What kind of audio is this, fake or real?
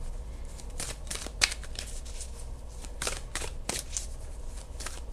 fake